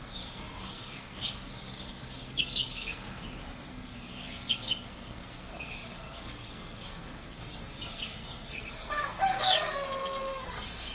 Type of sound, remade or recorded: remade